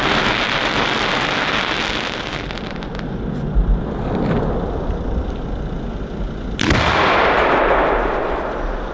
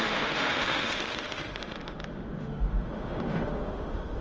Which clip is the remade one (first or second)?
second